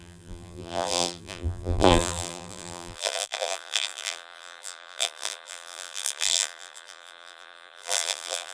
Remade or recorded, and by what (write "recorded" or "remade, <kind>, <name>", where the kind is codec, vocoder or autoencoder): remade, vocoder, BigVGAN v2